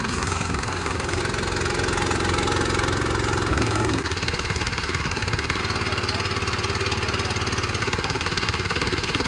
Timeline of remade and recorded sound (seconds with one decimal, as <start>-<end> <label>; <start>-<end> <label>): 0.0-1.2 remade; 1.2-3.5 recorded; 3.5-5.6 remade; 5.6-7.8 recorded; 7.8-9.3 remade